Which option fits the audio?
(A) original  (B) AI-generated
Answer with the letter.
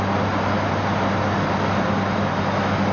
A